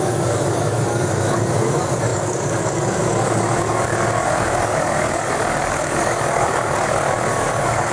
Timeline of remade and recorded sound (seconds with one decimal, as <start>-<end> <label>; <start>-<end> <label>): 0.0-7.9 remade